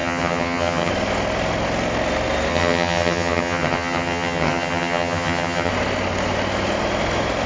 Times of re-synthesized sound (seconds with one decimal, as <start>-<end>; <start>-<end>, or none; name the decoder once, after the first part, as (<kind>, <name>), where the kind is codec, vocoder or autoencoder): 0.0-0.9 (vocoder, HiFi-GAN); 2.5-5.7